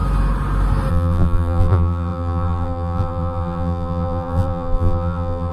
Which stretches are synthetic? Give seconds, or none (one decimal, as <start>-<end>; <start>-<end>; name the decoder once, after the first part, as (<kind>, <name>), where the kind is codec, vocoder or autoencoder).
0.9-5.5 (vocoder, BigVGAN v2)